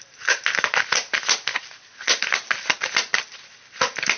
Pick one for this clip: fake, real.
real